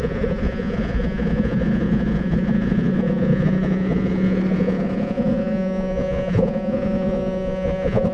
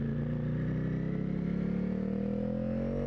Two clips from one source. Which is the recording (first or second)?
second